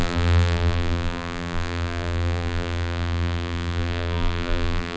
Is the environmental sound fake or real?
fake